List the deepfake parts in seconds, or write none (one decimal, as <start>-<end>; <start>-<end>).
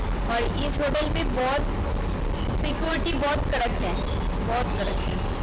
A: none